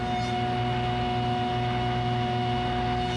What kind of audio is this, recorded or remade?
recorded